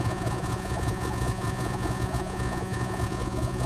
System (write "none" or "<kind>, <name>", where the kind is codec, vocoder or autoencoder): vocoder, Vocos